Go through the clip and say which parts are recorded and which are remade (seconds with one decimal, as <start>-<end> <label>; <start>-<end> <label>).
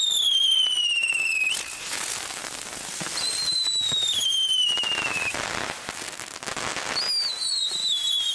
0.0-7.3 recorded; 7.3-8.3 remade